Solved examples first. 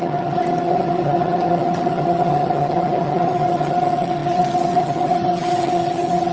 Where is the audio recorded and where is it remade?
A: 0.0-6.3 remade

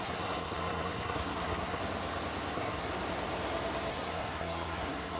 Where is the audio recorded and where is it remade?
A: 0.0-1.8 remade; 1.8-2.5 recorded; 2.5-2.9 remade; 2.9-3.9 recorded; 3.9-5.2 remade

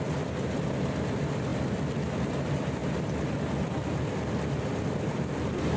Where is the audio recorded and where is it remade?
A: 0.0-2.8 recorded; 2.8-3.7 remade; 3.7-5.8 recorded

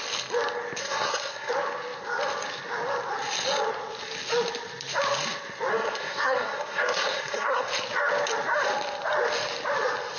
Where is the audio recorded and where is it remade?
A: 0.0-0.8 recorded; 0.8-1.5 remade; 1.5-5.7 recorded; 5.7-7.7 remade; 7.7-10.2 recorded

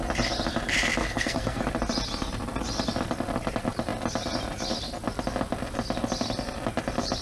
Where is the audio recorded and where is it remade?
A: 0.0-1.0 recorded; 1.0-1.6 remade; 1.6-7.2 recorded

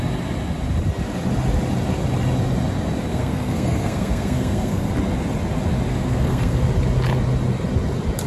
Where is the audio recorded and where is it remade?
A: 0.0-3.1 recorded; 3.1-4.9 remade; 4.9-5.9 recorded; 5.9-6.7 remade; 6.7-8.3 recorded

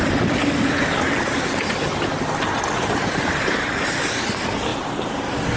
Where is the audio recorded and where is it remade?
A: 0.0-5.6 recorded